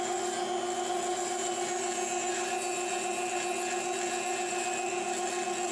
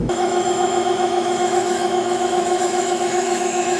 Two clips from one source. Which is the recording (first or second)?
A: first